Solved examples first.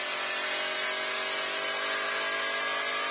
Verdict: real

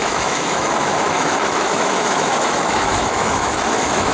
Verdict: fake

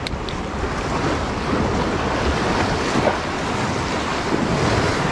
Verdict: real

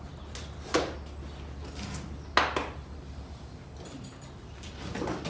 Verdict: real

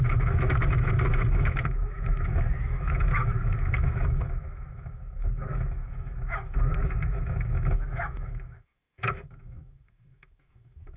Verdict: fake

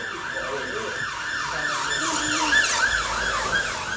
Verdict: real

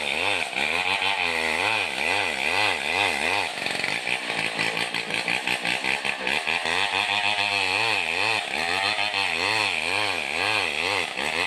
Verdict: real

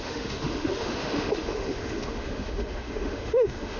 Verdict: fake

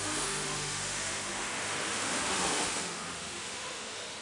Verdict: fake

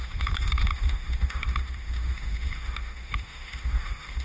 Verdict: fake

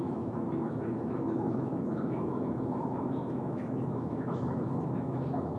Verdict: fake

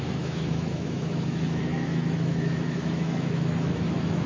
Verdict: fake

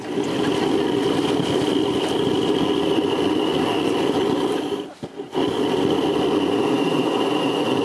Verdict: real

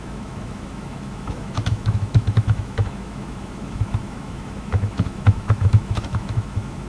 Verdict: fake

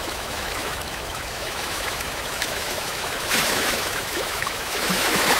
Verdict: fake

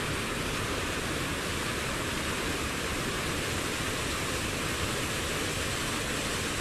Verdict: real